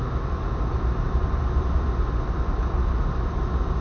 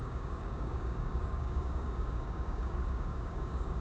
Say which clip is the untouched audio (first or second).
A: first